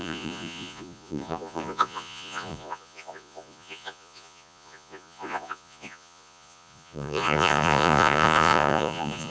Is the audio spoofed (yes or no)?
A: yes